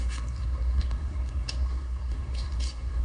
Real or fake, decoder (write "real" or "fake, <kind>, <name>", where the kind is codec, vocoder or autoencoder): fake, codec, SNAC